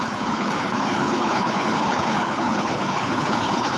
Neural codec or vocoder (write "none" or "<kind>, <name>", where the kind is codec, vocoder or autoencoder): codec, HILCodec